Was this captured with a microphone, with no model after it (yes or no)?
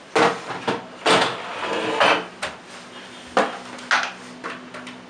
yes